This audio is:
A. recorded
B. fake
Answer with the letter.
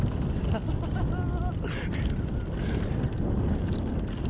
A